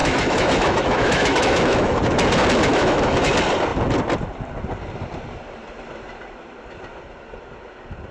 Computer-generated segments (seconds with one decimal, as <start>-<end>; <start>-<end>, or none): 0.0-2.0; 2.7-3.3